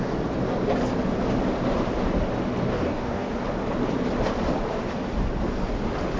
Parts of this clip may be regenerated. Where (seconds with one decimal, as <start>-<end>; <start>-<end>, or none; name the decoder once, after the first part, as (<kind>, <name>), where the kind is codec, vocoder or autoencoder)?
2.7-3.3 (codec, DAC)